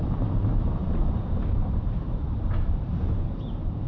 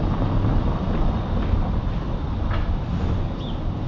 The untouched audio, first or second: second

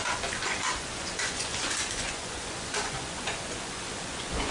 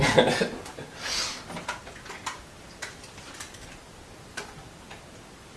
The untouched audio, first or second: second